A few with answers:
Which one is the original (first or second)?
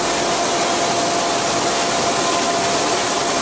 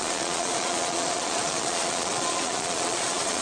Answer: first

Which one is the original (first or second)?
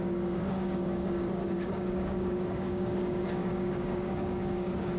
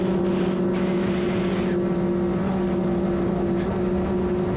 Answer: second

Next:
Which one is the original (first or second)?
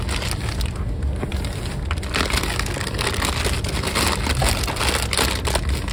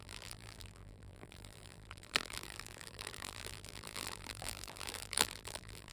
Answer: first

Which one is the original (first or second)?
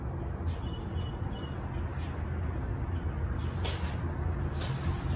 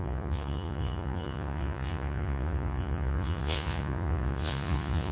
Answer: first